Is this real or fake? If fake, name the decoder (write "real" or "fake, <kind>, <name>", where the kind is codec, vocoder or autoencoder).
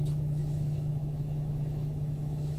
fake, autoencoder, DAC-VAE